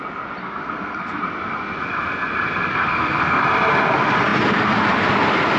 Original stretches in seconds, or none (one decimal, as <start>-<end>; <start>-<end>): 0.0-0.4; 1.2-2.7; 3.4-5.6